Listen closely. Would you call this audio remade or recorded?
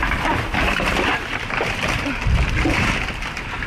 remade